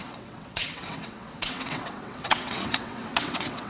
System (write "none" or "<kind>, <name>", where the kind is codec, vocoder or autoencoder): vocoder, WaveNeXt